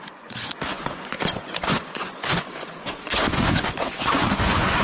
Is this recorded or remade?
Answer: remade